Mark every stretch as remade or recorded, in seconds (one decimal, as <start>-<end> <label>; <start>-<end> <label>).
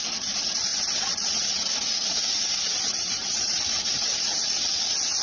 0.0-5.2 recorded